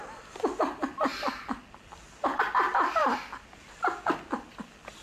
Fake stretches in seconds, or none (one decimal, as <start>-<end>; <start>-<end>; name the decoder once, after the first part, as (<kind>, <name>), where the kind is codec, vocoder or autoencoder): none

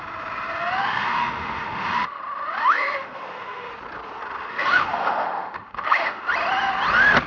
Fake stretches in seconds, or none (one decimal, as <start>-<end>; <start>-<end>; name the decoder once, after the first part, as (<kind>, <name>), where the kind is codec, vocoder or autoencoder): 0.8-2.2 (autoencoder, DAC-VAE); 2.6-3.7; 4.5-6.2

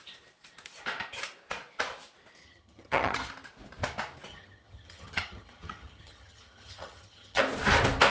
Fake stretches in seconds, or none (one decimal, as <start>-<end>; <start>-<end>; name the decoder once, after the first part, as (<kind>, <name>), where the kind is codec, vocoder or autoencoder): 2.4-3.3 (vocoder, HiFi-GAN); 4.3-7.4

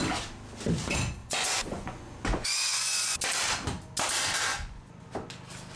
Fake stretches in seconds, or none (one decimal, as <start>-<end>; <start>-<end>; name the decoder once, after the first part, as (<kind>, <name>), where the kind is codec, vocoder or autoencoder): 1.2-3.2 (vocoder, Vocos); 4.5-5.1